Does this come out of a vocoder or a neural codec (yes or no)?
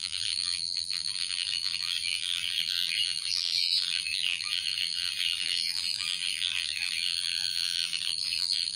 yes